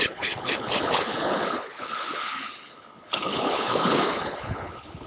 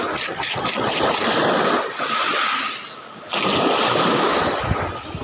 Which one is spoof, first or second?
first